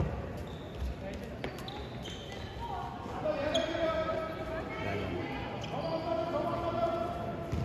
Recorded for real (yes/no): yes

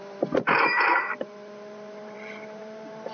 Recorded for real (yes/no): no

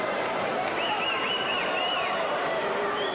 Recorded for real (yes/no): no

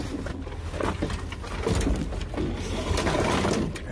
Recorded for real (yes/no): yes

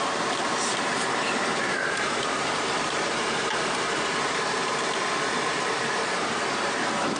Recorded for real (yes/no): no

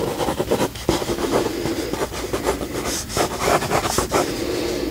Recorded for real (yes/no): yes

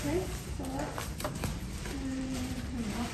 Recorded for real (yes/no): no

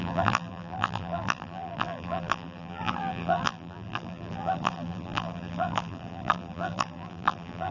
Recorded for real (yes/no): no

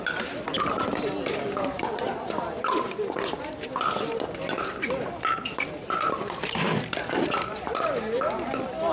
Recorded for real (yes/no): yes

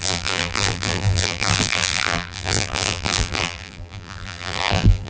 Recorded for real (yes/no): no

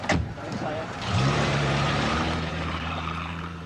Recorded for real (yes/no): no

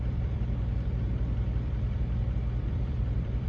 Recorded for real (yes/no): no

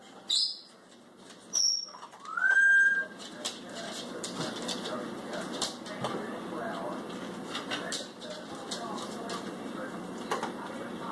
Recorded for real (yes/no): yes